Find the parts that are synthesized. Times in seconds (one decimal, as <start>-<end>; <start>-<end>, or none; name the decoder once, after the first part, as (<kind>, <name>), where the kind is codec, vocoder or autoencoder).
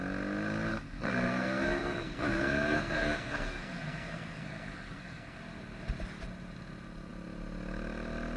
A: 0.7-5.4 (codec, SNAC)